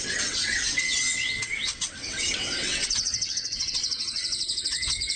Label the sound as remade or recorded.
remade